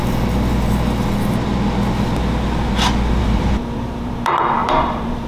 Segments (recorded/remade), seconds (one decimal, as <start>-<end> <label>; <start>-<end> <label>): 0.0-3.2 recorded; 3.2-5.3 remade